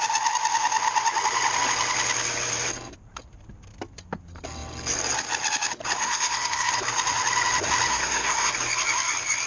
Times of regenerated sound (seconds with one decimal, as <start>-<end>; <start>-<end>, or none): 6.0-6.7; 7.9-8.5